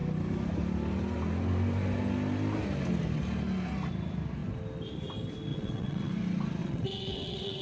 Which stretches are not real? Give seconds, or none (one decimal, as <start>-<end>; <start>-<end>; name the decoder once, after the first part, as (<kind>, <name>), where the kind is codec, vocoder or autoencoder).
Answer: 5.5-6.1 (vocoder, WaveNeXt); 6.6-7.6